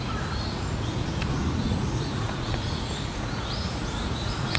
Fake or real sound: fake